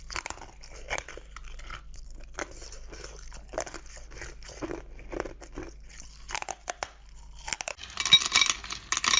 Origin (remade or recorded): recorded